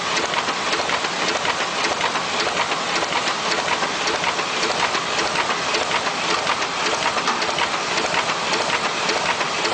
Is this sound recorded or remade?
recorded